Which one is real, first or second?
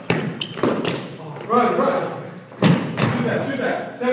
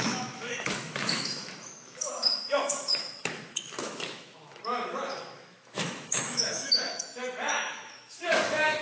first